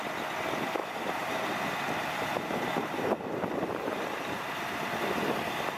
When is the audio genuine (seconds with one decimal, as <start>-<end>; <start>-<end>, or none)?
0.0-0.8; 4.3-5.8